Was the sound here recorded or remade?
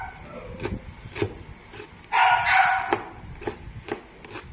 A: recorded